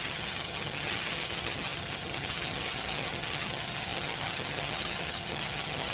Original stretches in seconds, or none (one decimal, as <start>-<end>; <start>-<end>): none

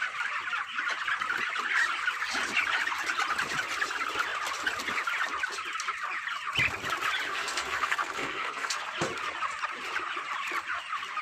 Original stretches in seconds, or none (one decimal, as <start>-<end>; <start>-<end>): 0.0-7.3; 8.9-11.2

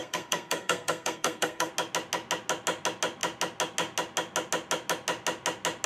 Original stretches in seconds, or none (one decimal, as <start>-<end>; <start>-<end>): 1.7-5.9

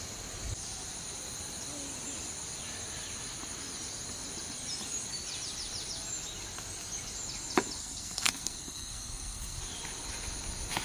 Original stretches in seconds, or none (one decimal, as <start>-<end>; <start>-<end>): 0.0-7.8; 9.6-10.8